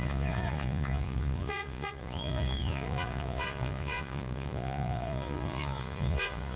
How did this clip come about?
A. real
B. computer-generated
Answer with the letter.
B